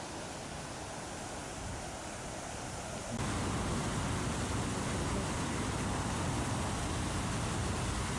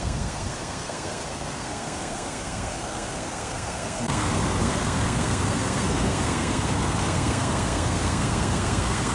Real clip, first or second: first